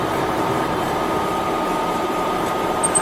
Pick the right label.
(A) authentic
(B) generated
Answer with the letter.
B